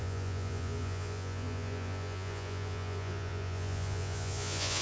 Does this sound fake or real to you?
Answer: fake